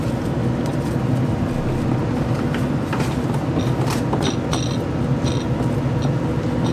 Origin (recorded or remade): recorded